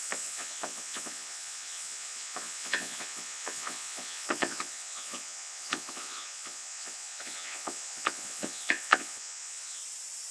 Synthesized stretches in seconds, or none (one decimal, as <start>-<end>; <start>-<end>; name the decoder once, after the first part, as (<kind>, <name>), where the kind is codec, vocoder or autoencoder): 0.0-9.8 (vocoder, Vocos)